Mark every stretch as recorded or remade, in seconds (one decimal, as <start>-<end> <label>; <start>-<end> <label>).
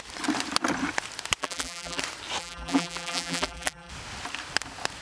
0.0-1.4 recorded; 1.4-2.0 remade; 2.0-2.4 recorded; 2.4-3.9 remade; 3.9-5.0 recorded